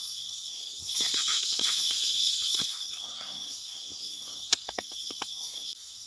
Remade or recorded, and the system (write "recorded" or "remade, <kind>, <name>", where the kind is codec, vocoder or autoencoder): remade, codec, SNAC